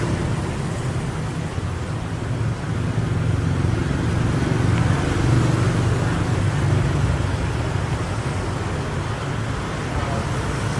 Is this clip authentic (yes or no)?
yes